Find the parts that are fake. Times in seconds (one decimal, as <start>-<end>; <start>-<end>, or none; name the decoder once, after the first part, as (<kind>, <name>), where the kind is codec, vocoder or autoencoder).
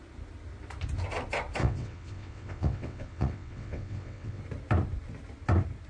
1.6-4.4 (vocoder, WaveNeXt)